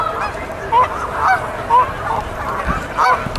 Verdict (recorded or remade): recorded